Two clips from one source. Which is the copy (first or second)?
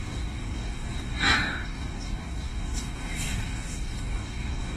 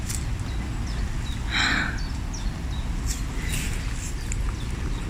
first